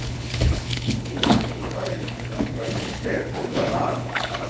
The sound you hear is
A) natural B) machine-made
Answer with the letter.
B